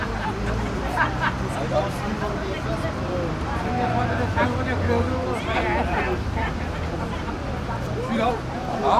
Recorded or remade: recorded